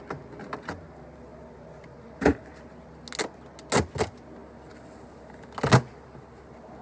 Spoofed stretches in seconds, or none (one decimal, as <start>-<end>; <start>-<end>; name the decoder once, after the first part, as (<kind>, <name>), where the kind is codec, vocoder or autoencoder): none